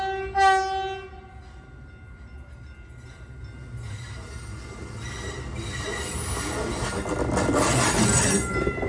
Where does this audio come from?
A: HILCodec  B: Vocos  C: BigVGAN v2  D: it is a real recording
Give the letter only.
D